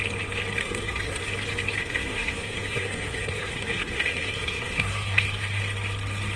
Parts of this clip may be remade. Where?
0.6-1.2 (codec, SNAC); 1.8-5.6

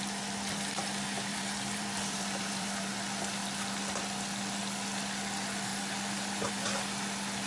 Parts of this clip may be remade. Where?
1.3-2.9 (vocoder, BigVGAN v2)